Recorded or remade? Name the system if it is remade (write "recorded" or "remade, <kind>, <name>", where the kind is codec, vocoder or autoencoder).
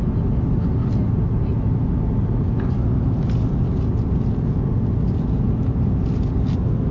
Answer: recorded